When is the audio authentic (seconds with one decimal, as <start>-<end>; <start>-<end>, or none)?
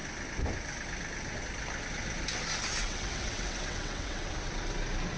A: 0.0-2.8; 4.3-5.2